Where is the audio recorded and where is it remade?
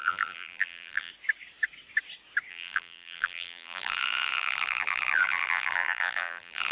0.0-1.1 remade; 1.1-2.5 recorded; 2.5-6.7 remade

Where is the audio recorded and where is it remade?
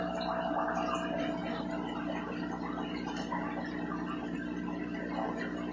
0.0-5.7 recorded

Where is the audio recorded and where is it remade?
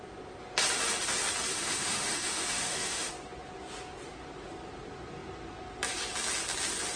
0.0-1.5 recorded; 1.5-3.1 remade; 3.1-7.0 recorded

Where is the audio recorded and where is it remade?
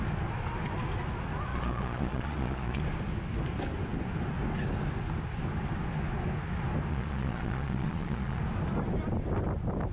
0.0-1.5 recorded; 1.5-2.8 remade; 2.8-6.9 recorded; 6.9-8.4 remade; 8.4-9.9 recorded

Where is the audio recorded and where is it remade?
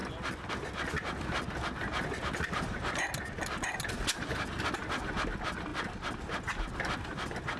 0.0-0.5 remade; 0.5-5.7 recorded; 5.7-7.6 remade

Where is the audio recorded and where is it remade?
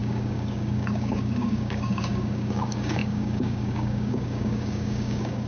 0.0-5.5 remade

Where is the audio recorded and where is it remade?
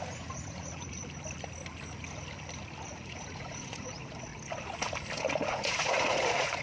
0.0-1.0 remade; 1.0-2.9 recorded; 2.9-4.3 remade; 4.3-5.4 recorded; 5.4-6.6 remade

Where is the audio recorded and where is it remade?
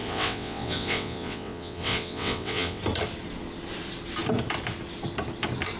0.0-2.8 remade; 2.8-5.8 recorded